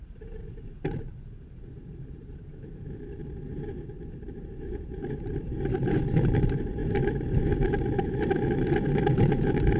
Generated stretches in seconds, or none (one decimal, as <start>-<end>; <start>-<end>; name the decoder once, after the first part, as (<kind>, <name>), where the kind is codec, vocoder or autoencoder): 0.0-9.8 (vocoder, BigVGAN v2)